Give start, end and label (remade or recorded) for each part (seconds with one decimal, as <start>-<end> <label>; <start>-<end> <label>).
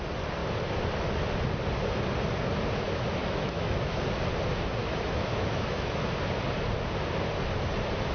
0.0-3.2 recorded; 3.2-4.0 remade; 4.0-4.8 recorded; 4.8-6.2 remade; 6.2-8.1 recorded